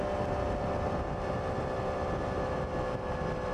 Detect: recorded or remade recorded